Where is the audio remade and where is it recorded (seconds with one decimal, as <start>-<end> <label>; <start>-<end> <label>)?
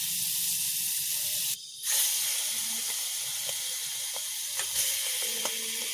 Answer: 0.0-5.9 recorded